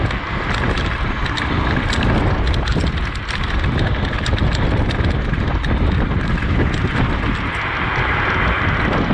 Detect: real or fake real